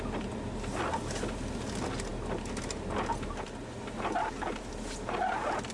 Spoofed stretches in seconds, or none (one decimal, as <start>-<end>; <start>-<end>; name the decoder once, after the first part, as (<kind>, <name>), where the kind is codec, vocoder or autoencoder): none